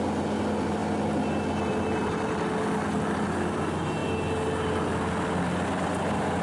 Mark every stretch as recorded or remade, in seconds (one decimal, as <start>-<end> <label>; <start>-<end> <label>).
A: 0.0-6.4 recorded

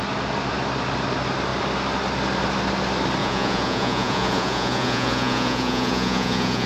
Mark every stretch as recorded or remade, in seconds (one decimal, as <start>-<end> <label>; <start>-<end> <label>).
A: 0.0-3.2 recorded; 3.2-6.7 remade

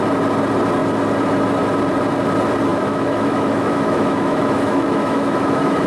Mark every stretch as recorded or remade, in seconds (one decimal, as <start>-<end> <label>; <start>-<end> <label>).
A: 0.0-2.7 recorded; 2.7-5.9 remade